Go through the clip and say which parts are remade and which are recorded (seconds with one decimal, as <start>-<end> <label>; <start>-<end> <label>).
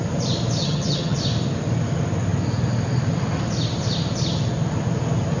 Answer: 0.0-0.6 recorded; 0.6-1.2 remade; 1.2-5.4 recorded